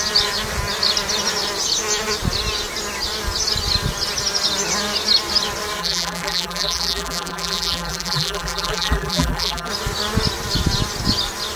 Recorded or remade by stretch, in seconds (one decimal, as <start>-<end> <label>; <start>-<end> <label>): 0.0-5.8 recorded; 5.8-9.7 remade; 9.7-11.6 recorded